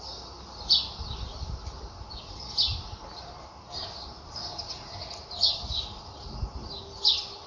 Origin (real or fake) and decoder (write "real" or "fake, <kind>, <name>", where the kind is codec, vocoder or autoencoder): real